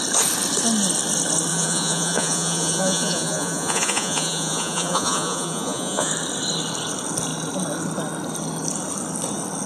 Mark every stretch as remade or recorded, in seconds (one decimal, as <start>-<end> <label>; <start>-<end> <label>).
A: 0.0-1.5 recorded; 1.5-6.1 remade; 6.1-9.7 recorded